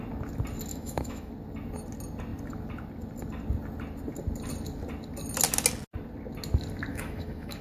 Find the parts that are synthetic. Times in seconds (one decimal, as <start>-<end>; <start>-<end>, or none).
0.7-1.3; 6.9-7.6